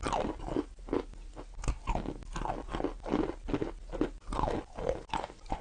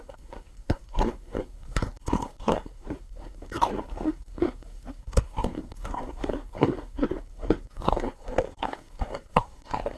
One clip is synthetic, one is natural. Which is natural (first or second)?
first